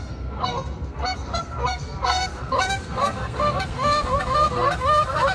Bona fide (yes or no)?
no